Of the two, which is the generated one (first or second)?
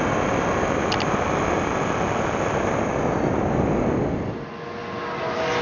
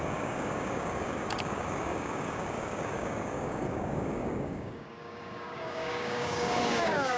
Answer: second